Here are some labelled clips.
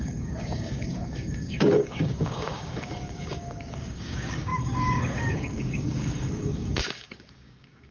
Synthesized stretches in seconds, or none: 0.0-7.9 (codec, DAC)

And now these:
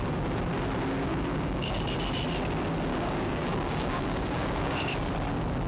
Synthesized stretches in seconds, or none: 1.1-1.7 (codec, DAC); 2.9-5.0

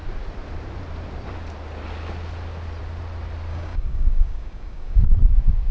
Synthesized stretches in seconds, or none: 3.5-5.1 (codec, DAC)

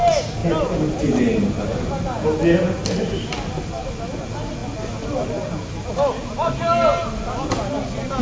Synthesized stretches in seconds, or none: none

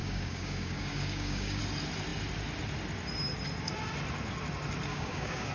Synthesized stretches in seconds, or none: 0.0-1.6 (codec, DAC); 4.9-5.5

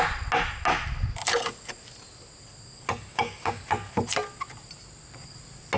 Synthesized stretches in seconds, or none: 3.1-3.6 (codec, DAC)

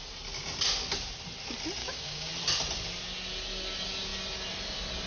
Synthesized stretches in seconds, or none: 1.8-2.3 (codec, DAC)

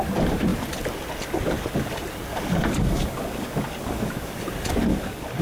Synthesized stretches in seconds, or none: 2.3-4.3 (codec, DAC); 4.9-5.4